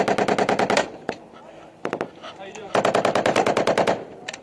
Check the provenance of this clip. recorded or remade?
recorded